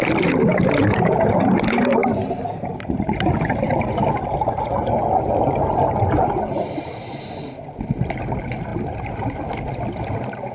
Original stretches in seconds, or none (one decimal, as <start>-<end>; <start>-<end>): 0.0-0.5; 4.7-8.7; 9.5-10.5